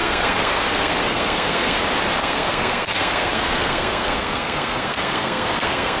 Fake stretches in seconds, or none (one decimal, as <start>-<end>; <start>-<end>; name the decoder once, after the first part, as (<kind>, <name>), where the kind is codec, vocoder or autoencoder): 0.0-1.8 (codec, SNAC); 2.2-6.0